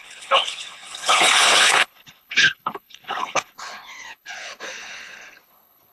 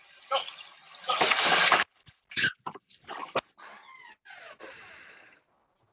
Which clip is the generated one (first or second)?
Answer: first